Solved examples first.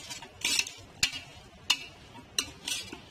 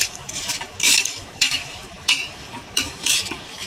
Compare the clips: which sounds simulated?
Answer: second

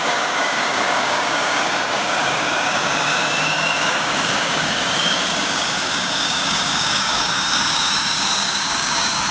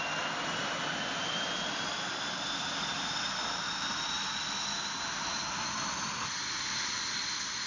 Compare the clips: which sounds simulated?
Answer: first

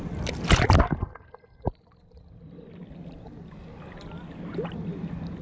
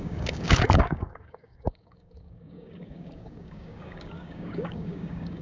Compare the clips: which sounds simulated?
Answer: second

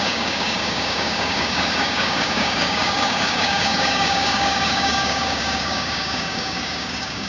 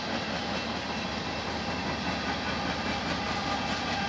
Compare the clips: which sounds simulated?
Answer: first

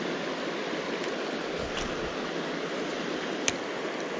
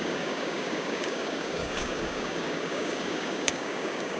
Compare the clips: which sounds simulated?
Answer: second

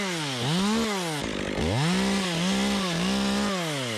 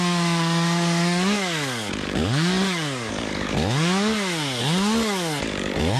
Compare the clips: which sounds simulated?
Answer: second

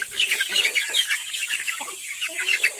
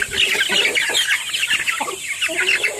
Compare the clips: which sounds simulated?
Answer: first